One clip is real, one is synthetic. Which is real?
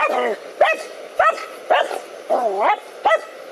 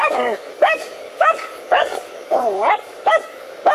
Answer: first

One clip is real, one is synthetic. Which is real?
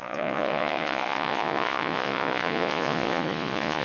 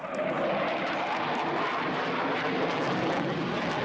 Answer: second